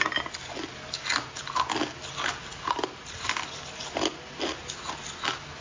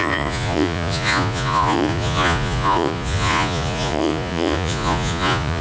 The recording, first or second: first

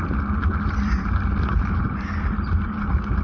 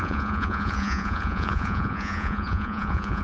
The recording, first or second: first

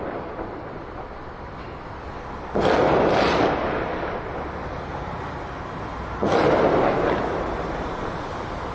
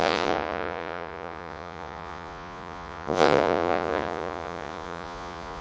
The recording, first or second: first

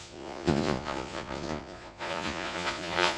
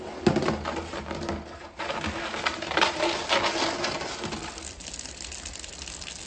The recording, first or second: second